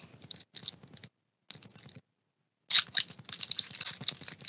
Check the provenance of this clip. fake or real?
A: real